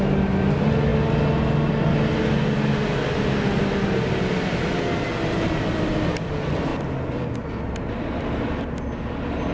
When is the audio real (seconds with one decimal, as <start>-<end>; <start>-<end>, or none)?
0.0-9.5